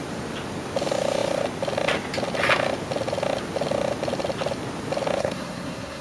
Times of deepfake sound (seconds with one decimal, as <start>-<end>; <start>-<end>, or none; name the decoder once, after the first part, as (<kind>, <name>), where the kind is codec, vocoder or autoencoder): 5.2-6.0 (codec, SNAC)